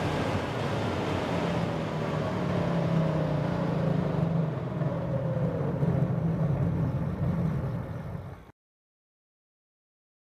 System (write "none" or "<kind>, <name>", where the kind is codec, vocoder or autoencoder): none